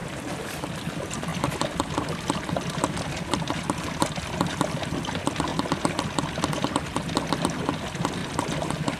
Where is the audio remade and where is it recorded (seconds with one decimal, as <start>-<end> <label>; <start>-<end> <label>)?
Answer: 0.0-9.0 recorded